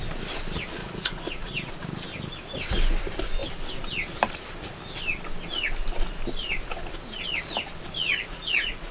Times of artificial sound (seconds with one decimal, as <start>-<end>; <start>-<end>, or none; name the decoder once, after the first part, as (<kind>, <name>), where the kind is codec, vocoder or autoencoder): 0.8-1.7 (vocoder, Vocos); 8.3-8.9